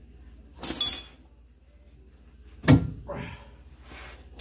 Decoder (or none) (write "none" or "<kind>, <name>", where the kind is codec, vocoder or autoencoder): none